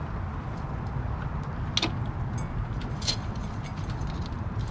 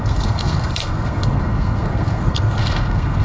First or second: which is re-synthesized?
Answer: second